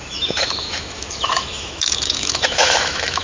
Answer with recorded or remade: remade